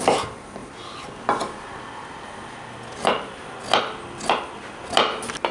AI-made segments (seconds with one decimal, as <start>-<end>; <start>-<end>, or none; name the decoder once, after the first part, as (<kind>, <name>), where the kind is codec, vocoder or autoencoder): none

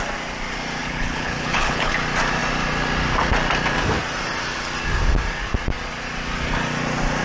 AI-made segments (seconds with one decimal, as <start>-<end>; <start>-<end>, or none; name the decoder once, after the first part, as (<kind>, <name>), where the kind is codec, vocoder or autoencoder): 0.8-1.9 (codec, HILCodec)

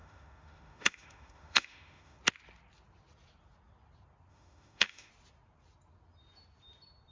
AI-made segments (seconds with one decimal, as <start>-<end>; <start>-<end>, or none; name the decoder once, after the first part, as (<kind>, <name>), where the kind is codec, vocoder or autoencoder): 0.0-2.2 (autoencoder, DAC-VAE); 4.3-5.1

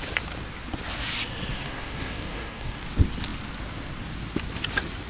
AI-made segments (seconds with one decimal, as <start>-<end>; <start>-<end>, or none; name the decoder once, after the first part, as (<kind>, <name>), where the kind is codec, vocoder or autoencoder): 1.5-2.8 (codec, DAC)

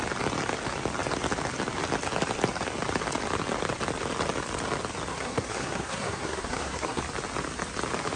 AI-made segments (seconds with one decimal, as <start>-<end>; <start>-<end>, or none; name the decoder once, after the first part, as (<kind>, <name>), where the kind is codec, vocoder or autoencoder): 5.1-7.0 (codec, SNAC)